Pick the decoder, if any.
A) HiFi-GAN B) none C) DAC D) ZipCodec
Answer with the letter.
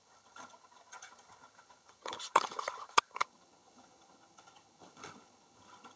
A